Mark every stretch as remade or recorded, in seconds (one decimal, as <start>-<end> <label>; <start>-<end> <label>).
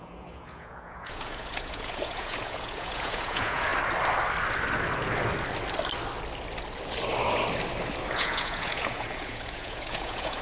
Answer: 0.0-3.7 remade; 3.7-8.1 recorded; 8.1-10.4 remade